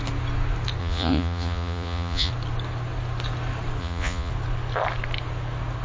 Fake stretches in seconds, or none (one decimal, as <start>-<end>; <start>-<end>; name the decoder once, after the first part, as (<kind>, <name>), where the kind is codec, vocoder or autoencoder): 0.8-2.3 (vocoder, Vocos); 3.8-4.3